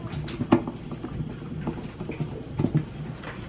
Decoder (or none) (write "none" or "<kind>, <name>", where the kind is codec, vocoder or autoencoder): none